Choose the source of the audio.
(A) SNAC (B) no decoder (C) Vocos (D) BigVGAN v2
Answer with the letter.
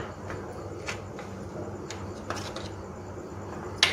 B